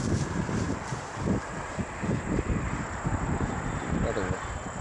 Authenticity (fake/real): real